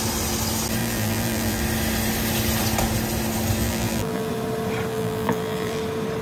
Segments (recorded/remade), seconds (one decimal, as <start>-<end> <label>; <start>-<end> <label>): 0.0-0.8 recorded; 0.8-1.6 remade; 1.6-3.6 recorded; 3.6-4.3 remade; 4.3-4.9 recorded; 4.9-5.8 remade; 5.8-6.2 recorded

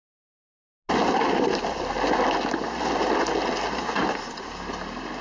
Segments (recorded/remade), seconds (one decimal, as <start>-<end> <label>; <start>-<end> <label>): 0.0-5.2 recorded

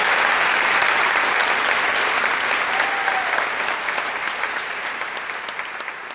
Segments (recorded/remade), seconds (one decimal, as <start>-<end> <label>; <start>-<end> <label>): 0.0-6.1 recorded

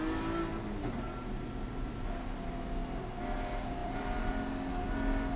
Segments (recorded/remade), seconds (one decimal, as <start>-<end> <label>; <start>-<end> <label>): 0.0-3.8 recorded; 3.8-4.3 remade; 4.3-5.4 recorded

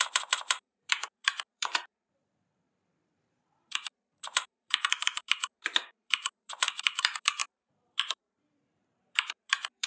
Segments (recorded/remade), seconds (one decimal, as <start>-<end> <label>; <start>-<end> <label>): 0.0-9.9 remade

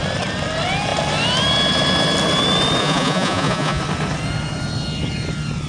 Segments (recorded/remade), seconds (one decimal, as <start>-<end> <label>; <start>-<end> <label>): 0.0-2.8 recorded; 2.8-3.8 remade; 3.8-5.7 recorded